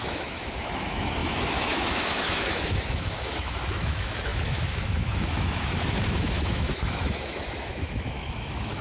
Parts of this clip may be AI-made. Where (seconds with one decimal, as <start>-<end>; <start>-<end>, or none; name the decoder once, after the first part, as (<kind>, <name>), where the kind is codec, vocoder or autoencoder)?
0.0-8.8 (autoencoder, DAC-VAE)